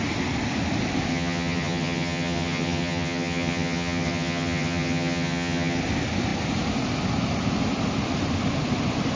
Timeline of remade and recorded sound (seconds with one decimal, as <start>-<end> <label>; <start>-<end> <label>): 0.0-1.1 recorded; 1.1-5.8 remade; 5.8-9.2 recorded